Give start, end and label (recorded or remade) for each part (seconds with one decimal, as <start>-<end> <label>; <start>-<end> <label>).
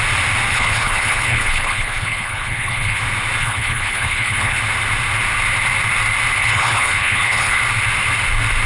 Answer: 0.0-0.5 recorded; 0.5-3.0 remade; 3.0-3.4 recorded; 3.4-4.6 remade; 4.6-6.4 recorded; 6.4-7.6 remade; 7.6-8.7 recorded